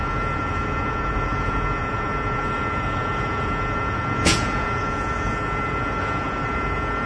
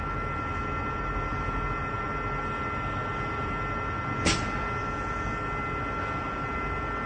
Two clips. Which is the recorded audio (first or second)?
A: second